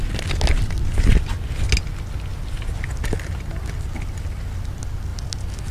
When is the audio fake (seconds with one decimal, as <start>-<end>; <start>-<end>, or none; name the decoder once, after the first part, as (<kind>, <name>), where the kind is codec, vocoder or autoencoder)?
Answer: none